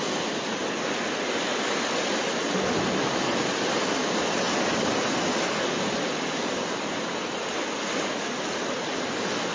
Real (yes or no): yes